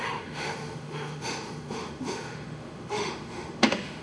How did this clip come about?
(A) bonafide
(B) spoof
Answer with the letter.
B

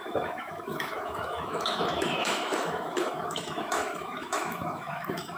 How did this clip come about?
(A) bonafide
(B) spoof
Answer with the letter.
B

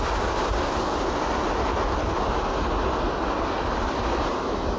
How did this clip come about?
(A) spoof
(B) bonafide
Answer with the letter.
B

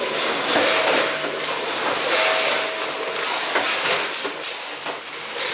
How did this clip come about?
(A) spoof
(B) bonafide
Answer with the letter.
B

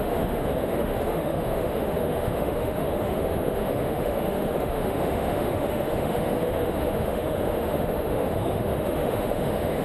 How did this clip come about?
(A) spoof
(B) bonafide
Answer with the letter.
A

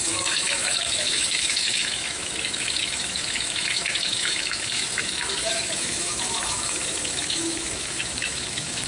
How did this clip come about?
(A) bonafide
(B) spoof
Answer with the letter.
B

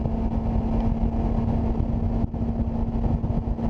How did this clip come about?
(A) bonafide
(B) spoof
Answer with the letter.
A